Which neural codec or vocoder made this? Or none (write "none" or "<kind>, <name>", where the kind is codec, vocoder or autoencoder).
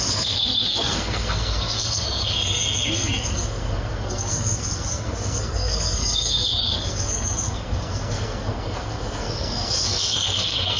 codec, SNAC